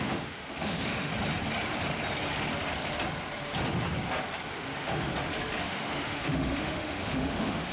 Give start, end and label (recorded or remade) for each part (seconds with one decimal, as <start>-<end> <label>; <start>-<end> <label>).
0.0-1.1 remade; 1.1-4.5 recorded; 4.5-5.1 remade; 5.1-5.6 recorded; 5.6-7.7 remade